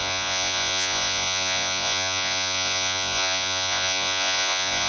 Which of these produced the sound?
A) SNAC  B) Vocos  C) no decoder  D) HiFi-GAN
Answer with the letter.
B